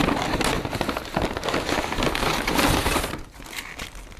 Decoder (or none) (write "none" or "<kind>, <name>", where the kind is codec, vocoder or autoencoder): none